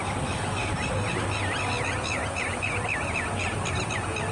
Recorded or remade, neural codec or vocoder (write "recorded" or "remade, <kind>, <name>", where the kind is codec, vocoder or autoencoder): recorded